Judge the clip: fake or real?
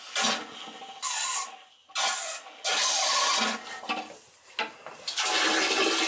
real